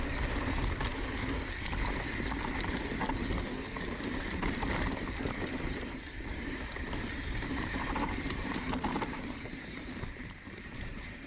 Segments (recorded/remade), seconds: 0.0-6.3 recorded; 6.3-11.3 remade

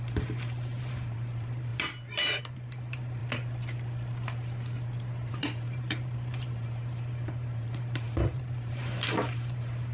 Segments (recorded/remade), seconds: 0.0-1.7 remade; 1.7-2.4 recorded; 2.4-3.2 remade; 3.2-5.3 recorded; 5.3-9.9 remade

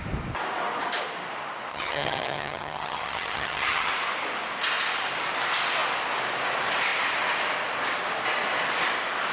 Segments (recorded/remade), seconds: 0.0-1.7 recorded; 1.7-3.9 remade; 3.9-9.3 recorded

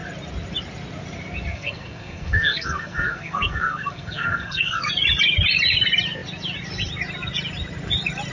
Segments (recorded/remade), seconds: 0.0-1.5 recorded; 1.5-4.9 remade; 4.9-8.3 recorded

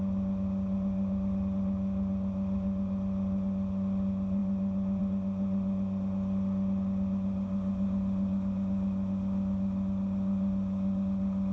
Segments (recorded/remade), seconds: 0.0-11.5 recorded

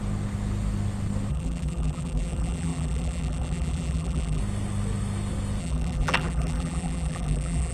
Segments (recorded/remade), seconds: 0.0-1.3 recorded; 1.3-4.4 remade; 4.4-5.6 recorded; 5.6-7.7 remade